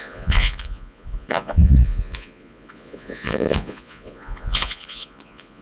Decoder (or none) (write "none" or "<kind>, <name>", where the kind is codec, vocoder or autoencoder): vocoder, Vocos